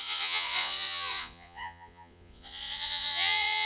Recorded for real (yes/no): no